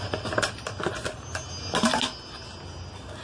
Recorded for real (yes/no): yes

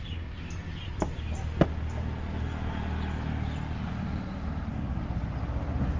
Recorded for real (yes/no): yes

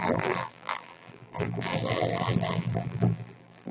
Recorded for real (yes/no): no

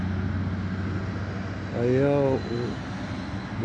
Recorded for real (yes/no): yes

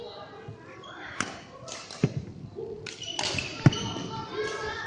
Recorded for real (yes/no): yes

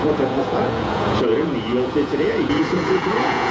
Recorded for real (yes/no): no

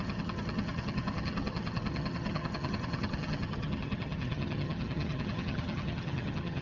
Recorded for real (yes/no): no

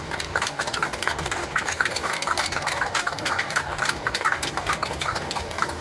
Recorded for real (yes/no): no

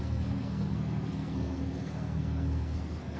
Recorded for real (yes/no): no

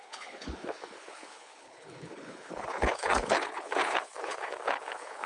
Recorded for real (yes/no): no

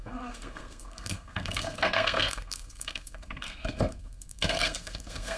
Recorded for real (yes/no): no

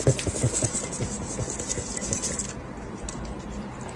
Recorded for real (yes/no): yes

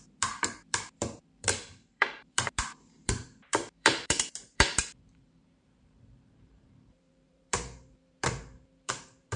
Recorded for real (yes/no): no